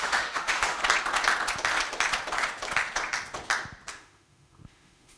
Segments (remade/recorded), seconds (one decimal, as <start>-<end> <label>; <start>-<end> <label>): 0.0-0.8 remade; 0.8-3.9 recorded; 3.9-5.2 remade

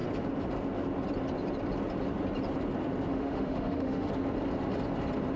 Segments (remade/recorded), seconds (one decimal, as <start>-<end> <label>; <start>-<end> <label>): 0.0-3.1 recorded; 3.1-4.1 remade; 4.1-5.4 recorded

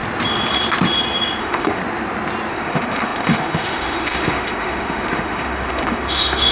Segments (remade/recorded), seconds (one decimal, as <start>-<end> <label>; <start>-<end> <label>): 0.0-1.4 recorded; 1.4-1.8 remade; 1.8-2.5 recorded; 2.5-6.5 remade

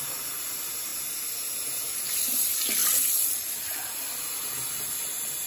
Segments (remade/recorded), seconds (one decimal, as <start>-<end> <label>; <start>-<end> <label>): 0.0-5.5 recorded

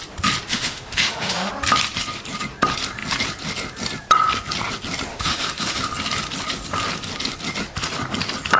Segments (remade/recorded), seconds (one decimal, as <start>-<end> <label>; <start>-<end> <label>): 0.0-0.5 recorded; 0.5-1.5 remade; 1.5-5.1 recorded; 5.1-5.8 remade; 5.8-8.6 recorded

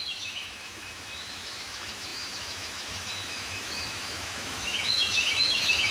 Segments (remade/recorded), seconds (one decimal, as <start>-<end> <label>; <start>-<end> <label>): 0.0-5.9 remade

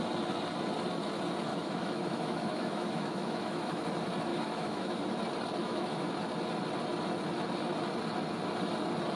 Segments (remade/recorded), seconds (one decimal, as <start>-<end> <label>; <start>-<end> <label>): 0.0-1.5 recorded; 1.5-3.9 remade; 3.9-4.3 recorded; 4.3-5.0 remade; 5.0-5.6 recorded; 5.6-6.1 remade; 6.1-9.2 recorded